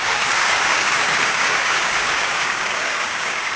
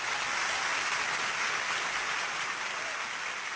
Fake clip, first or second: first